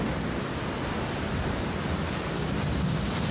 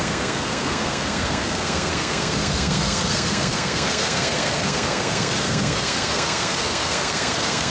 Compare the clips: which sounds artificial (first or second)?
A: second